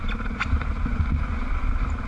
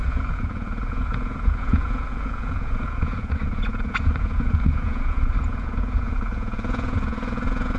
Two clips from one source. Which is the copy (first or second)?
second